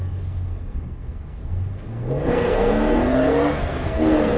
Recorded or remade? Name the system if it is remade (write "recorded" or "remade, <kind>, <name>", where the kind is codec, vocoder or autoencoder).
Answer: remade, codec, SNAC